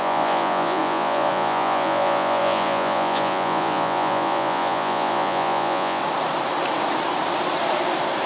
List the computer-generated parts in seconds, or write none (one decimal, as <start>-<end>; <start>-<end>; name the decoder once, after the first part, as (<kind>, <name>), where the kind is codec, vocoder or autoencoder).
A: 0.0-6.0 (vocoder, Vocos)